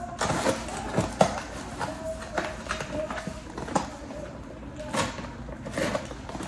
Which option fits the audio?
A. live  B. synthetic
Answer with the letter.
A